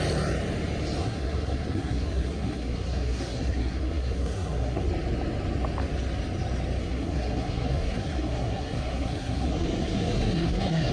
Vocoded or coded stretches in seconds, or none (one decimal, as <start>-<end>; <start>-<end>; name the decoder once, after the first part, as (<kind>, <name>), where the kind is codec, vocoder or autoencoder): 1.0-4.9 (codec, SNAC); 6.8-10.9